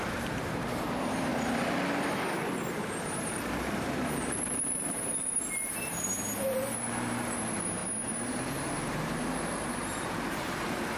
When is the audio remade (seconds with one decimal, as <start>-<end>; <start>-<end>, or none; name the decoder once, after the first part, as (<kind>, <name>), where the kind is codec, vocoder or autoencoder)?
0.0-1.3 (vocoder, BigVGAN v2); 2.7-7.8; 8.3-11.0